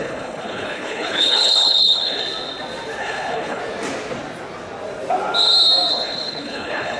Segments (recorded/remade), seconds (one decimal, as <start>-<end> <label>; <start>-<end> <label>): 0.0-2.2 remade; 2.2-3.0 recorded; 3.0-3.6 remade; 3.6-5.9 recorded; 5.9-7.0 remade